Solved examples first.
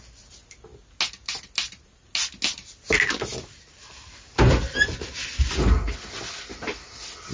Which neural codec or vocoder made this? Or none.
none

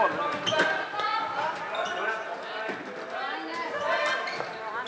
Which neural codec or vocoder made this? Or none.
none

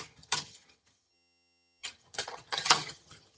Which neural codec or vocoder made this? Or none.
vocoder, HiFi-GAN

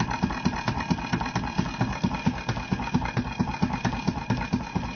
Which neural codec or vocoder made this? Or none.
none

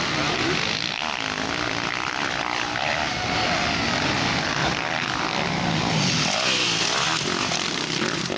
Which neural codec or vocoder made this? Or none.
none